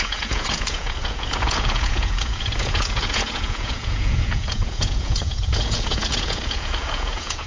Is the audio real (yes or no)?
no